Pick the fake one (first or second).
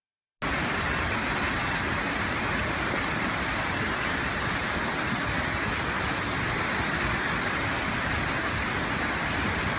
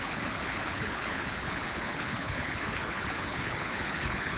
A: second